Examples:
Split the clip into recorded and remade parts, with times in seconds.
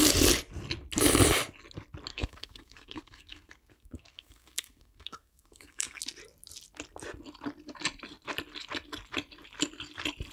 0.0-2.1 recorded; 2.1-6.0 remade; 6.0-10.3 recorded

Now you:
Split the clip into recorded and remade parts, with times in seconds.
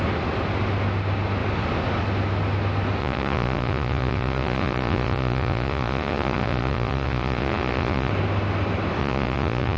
0.0-3.0 recorded; 3.0-8.1 remade; 8.1-9.0 recorded; 9.0-9.8 remade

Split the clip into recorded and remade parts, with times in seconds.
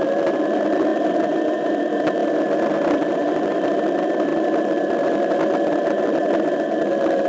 0.0-2.2 remade; 2.2-2.9 recorded; 2.9-7.3 remade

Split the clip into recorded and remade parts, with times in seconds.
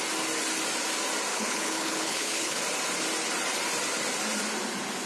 0.0-1.3 recorded; 1.3-2.6 remade; 2.6-5.1 recorded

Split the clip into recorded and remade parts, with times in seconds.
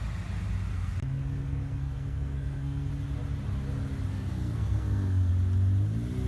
0.0-0.7 recorded; 0.7-2.9 remade; 2.9-4.1 recorded; 4.1-5.3 remade; 5.3-6.3 recorded